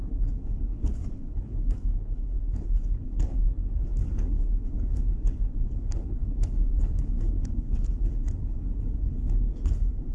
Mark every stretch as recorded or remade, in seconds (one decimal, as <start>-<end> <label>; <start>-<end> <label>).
0.0-10.1 remade